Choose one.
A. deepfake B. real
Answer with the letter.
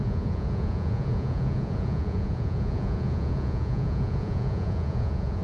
A